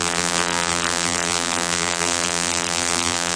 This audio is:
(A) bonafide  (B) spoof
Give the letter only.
B